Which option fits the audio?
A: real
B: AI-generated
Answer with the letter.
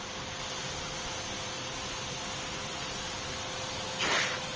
A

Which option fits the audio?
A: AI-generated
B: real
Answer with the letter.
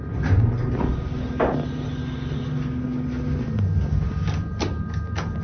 B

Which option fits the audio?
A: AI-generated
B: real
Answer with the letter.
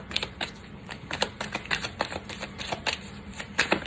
B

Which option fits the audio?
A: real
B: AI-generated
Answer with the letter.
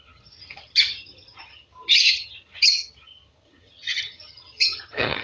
B